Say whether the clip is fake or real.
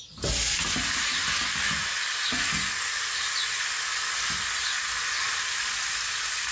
real